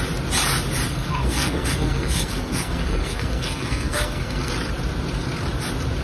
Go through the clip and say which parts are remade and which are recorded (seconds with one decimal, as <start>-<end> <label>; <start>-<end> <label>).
0.0-0.9 recorded; 0.9-4.5 remade; 4.5-6.0 recorded